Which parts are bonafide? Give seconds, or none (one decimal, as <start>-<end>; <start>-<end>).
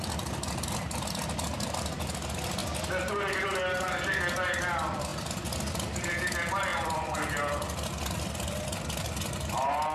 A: 0.0-6.7; 7.3-9.9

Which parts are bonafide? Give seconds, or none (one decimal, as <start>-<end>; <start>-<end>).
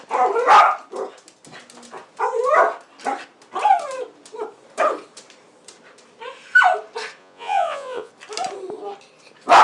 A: 0.0-7.2; 8.1-9.6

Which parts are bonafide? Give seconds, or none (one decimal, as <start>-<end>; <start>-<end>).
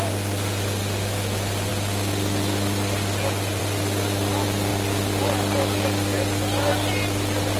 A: 0.0-7.6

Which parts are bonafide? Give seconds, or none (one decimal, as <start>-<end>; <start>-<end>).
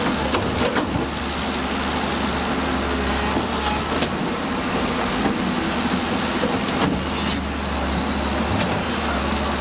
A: 0.0-9.6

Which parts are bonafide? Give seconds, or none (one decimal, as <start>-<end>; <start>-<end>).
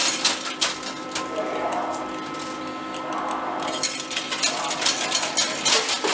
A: 0.0-6.1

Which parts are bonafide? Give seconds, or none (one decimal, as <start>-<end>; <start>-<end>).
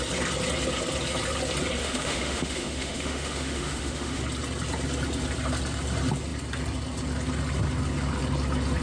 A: 0.0-1.8; 4.2-8.8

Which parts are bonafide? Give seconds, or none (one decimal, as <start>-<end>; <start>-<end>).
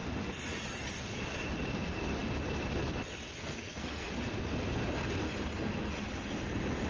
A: 0.0-3.4; 4.1-6.9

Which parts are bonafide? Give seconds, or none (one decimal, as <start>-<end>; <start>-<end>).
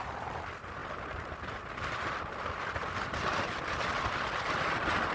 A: 0.0-0.8; 3.9-5.1